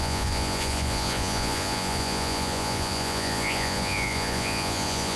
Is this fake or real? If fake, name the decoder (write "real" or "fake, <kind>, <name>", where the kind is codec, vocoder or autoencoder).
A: fake, vocoder, Vocos